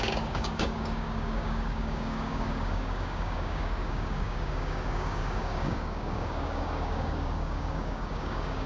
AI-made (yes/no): yes